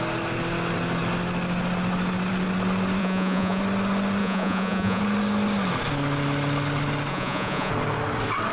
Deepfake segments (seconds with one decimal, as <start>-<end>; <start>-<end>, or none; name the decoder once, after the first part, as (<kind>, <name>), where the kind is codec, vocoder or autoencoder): 3.0-3.6 (vocoder, Vocos); 4.2-5.0; 7.1-7.7